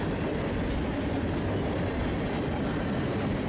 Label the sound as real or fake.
real